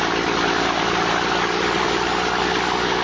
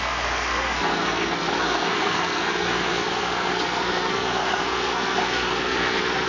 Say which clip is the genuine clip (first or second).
first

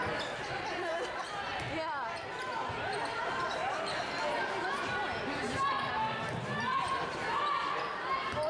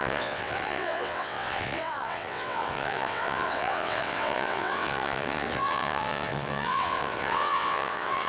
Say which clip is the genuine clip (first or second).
first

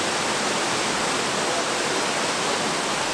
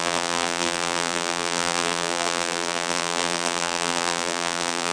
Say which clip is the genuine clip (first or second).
first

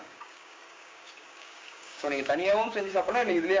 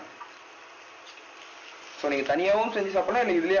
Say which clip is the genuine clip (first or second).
second